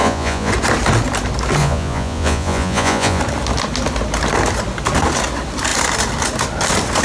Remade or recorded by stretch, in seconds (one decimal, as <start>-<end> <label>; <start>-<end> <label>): 0.0-0.5 remade; 0.5-1.6 recorded; 1.6-3.2 remade; 3.2-7.0 recorded